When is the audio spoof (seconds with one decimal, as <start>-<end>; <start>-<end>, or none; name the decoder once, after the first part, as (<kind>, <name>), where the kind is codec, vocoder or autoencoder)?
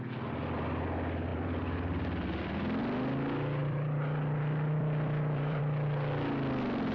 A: 1.3-2.8 (vocoder, BigVGAN v2); 3.6-5.6